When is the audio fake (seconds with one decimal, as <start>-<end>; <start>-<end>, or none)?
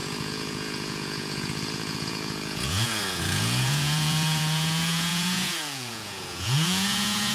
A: 0.0-7.3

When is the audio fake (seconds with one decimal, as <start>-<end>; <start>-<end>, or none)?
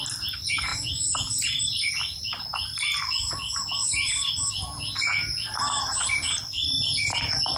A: none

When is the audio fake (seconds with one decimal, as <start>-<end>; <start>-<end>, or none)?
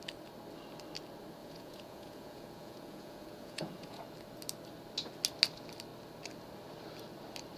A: 1.4-4.0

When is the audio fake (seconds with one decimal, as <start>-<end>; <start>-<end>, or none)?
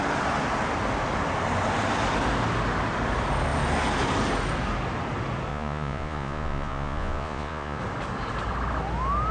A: 5.5-7.8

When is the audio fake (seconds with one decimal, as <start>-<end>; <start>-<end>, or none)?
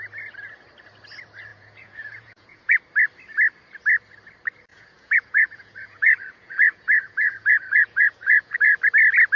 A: 1.5-2.8; 4.7-8.8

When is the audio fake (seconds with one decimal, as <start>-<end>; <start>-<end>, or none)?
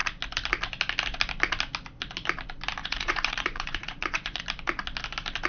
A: 2.8-4.4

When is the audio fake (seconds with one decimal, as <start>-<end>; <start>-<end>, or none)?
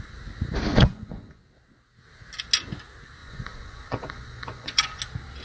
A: 0.7-1.4; 3.2-5.0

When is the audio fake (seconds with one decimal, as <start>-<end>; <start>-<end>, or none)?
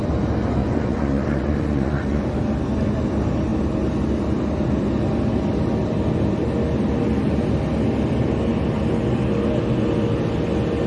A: 0.6-2.2